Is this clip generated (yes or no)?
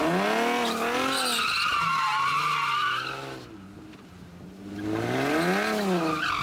no